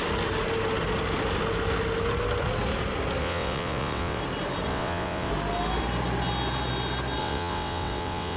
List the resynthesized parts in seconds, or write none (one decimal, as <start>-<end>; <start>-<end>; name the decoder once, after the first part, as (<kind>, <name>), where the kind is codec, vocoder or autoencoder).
3.2-4.2 (vocoder, WaveNeXt); 4.7-5.3; 7.2-8.4